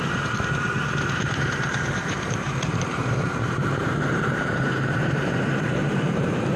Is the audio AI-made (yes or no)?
yes